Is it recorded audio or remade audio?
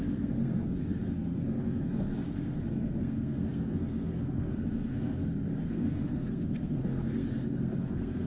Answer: remade